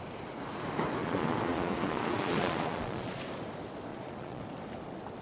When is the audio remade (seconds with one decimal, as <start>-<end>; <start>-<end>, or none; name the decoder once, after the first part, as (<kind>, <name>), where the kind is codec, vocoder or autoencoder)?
1.0-3.2 (vocoder, Vocos); 3.9-4.4